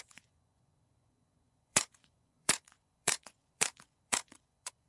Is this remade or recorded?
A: remade